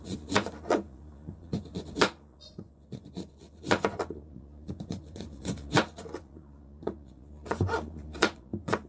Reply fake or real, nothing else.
fake